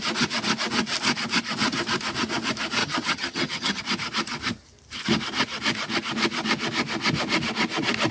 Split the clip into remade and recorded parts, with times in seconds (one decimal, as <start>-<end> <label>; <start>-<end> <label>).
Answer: 0.0-2.8 recorded; 2.8-3.8 remade; 3.8-8.1 recorded